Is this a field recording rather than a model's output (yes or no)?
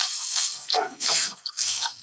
no